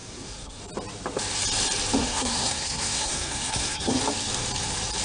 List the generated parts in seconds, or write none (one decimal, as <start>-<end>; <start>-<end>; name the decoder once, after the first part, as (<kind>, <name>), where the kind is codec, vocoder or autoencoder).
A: 0.0-0.6 (codec, SNAC); 2.0-4.0